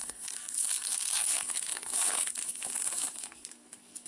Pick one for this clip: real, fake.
fake